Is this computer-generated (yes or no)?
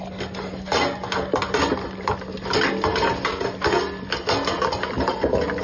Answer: no